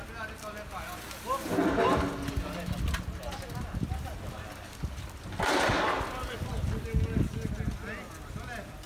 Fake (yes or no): no